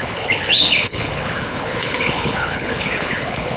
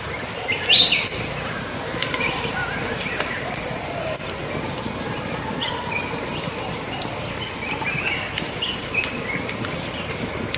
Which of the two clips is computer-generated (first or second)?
first